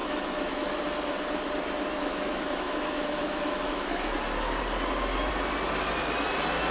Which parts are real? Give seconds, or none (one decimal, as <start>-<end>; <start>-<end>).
0.6-2.0; 4.1-6.7